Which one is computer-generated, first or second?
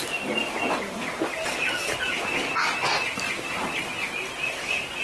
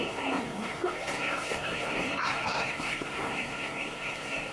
second